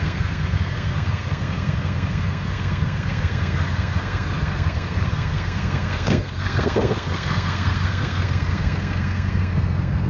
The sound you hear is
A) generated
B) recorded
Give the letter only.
A